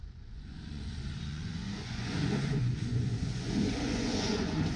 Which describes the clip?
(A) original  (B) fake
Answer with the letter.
B